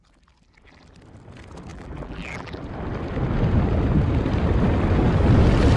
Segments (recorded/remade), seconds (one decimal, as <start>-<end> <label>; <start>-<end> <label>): 0.0-1.7 recorded; 1.7-2.6 remade; 2.6-5.8 recorded